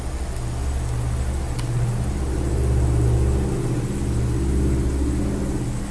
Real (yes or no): yes